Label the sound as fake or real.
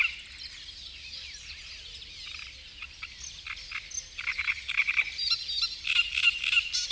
real